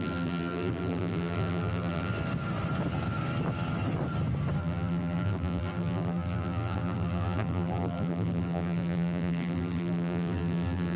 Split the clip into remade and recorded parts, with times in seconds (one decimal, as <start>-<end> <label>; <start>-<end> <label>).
0.0-2.1 remade; 2.1-4.6 recorded; 4.6-11.0 remade